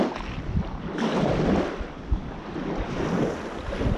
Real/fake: real